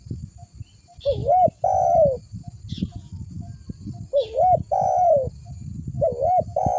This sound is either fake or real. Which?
real